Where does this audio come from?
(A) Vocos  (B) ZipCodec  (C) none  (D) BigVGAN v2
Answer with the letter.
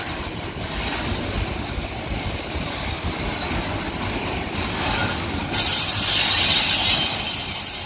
C